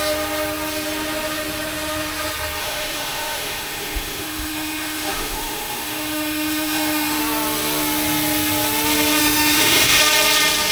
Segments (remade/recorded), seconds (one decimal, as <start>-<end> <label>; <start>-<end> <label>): 0.0-2.6 recorded; 2.6-7.2 remade; 7.2-9.2 recorded; 9.2-10.0 remade; 10.0-10.7 recorded